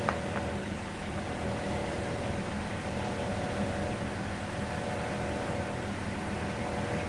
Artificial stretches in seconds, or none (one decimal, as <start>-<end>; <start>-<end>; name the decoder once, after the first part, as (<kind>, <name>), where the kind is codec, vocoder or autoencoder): 0.6-1.2 (codec, HILCodec)